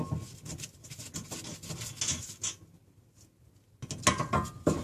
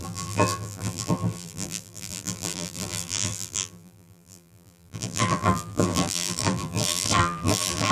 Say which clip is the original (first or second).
first